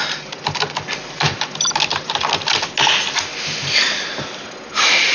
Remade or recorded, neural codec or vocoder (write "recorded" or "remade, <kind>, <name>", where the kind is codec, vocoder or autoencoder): recorded